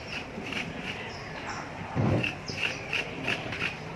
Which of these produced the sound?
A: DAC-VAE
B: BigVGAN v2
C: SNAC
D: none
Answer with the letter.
B